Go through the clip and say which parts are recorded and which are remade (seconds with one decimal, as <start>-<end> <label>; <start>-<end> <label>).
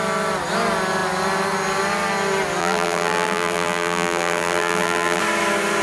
0.0-2.6 recorded; 2.6-5.2 remade; 5.2-5.8 recorded